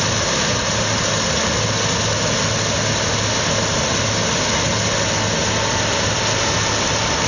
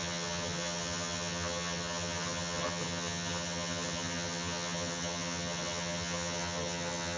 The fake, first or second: second